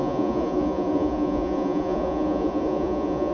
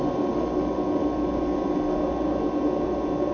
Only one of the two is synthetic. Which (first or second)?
first